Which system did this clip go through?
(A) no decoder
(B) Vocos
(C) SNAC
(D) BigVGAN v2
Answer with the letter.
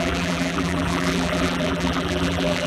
D